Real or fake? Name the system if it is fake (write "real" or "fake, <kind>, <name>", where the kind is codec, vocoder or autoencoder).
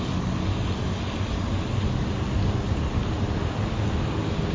real